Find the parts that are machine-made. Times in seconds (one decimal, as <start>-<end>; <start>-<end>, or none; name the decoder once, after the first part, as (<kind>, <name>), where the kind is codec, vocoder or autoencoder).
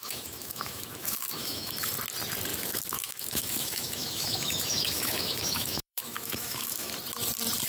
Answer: 0.0-1.9 (autoencoder, DAC-VAE); 2.5-6.9